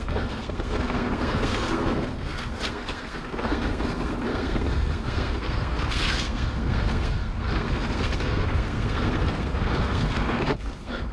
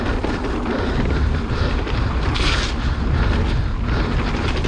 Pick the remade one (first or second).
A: first